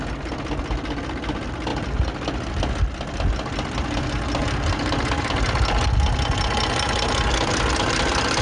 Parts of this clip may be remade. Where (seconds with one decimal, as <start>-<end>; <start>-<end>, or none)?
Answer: 4.4-5.3